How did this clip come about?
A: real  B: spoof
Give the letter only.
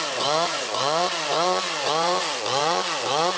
B